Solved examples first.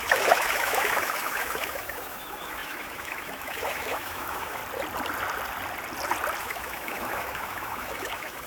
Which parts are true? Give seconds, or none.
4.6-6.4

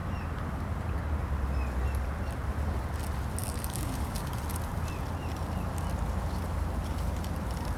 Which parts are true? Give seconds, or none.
0.0-3.4; 4.3-7.8

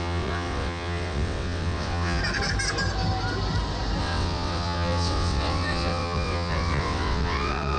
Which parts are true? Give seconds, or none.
2.2-4.0

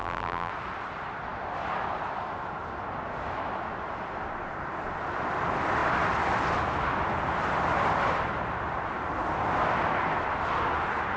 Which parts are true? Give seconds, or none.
0.5-11.2

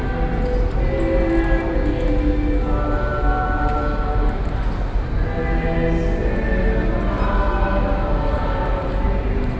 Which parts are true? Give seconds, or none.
0.0-9.6

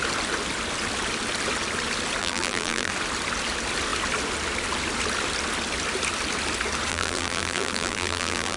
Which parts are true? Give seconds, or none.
0.0-2.2; 2.9-6.9

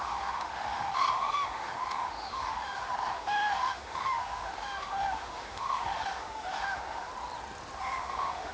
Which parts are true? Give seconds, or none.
7.1-7.8